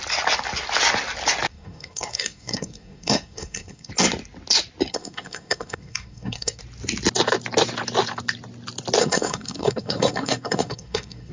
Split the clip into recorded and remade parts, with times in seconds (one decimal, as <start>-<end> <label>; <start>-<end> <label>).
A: 0.0-1.5 recorded; 1.5-3.9 remade; 3.9-4.9 recorded; 4.9-6.6 remade; 6.6-9.0 recorded; 9.0-11.3 remade